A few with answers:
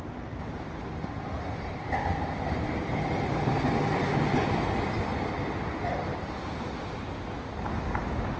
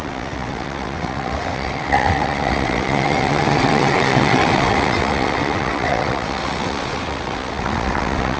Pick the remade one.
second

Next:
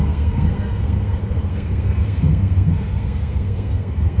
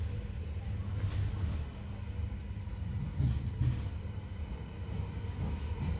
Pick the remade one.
first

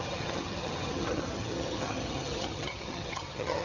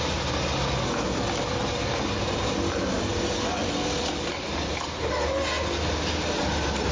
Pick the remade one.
first